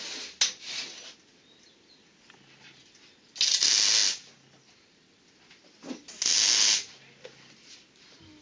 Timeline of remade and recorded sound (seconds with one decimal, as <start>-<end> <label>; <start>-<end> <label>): 0.0-8.4 recorded

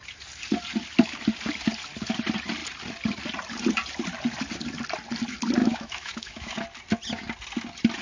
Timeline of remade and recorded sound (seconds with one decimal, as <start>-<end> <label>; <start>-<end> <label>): 0.0-5.6 recorded; 5.6-6.5 remade; 6.5-8.0 recorded